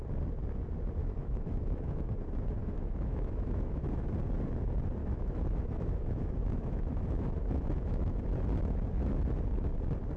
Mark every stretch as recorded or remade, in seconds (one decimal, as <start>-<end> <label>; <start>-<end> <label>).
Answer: 0.0-1.0 recorded; 1.0-2.1 remade; 2.1-2.6 recorded; 2.6-3.9 remade; 3.9-5.0 recorded; 5.0-8.2 remade; 8.2-10.2 recorded